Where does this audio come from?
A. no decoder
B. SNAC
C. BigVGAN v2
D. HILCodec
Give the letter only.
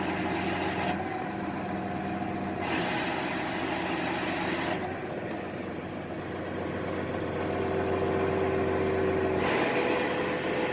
A